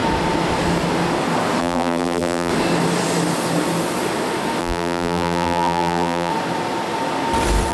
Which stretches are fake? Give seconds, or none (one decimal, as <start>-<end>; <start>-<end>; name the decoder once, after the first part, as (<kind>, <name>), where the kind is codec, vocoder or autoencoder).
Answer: 1.6-2.5 (vocoder, BigVGAN v2); 4.6-6.3